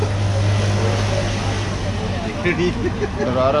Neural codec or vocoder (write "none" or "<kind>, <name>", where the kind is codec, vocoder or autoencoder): none